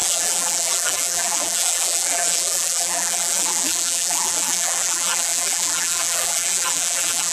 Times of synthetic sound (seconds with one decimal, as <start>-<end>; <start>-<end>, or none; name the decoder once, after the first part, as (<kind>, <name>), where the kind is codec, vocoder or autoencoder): 0.0-7.3 (vocoder, BigVGAN v2)

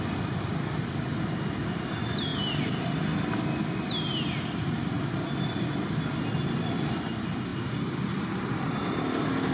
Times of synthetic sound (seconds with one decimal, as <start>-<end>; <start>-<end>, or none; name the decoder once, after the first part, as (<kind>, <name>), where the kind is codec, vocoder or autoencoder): none